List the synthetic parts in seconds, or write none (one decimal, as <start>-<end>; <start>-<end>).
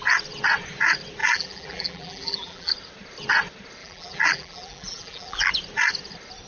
1.2-2.7; 3.8-5.5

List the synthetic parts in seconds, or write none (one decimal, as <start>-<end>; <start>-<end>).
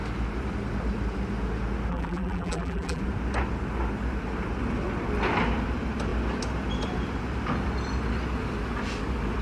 1.9-3.0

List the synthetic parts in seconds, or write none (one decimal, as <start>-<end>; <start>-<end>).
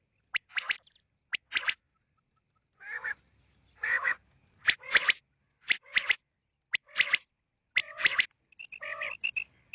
1.8-3.3; 4.4-5.2; 7.8-8.6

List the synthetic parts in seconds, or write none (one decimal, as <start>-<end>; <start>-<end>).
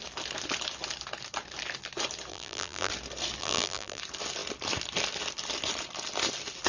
2.3-2.9; 3.4-4.0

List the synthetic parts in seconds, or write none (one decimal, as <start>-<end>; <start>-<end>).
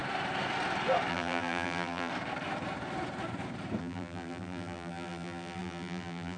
1.1-2.1; 3.8-6.4